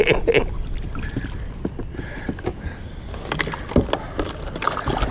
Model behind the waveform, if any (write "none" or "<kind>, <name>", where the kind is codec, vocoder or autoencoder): none